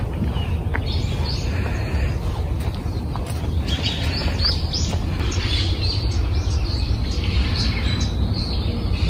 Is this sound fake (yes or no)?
no